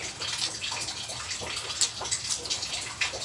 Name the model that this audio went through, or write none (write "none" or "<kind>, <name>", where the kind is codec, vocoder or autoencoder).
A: none